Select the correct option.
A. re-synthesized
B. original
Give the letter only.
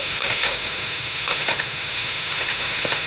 A